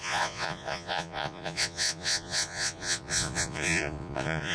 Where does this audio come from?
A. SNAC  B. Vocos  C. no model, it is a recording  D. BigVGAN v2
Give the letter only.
B